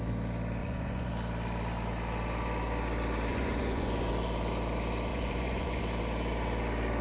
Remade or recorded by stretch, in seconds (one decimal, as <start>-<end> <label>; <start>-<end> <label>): 0.0-0.6 recorded; 0.6-1.1 remade; 1.1-3.3 recorded; 3.3-4.1 remade; 4.1-5.1 recorded; 5.1-5.8 remade; 5.8-7.0 recorded